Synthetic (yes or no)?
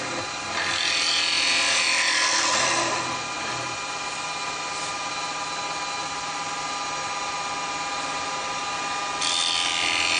no